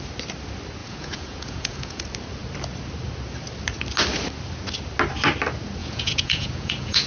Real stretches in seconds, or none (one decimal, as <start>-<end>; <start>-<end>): 0.0-0.8; 2.0-5.8